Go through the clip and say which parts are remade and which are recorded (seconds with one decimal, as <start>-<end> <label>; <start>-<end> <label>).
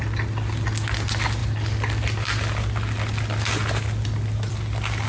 0.0-5.1 recorded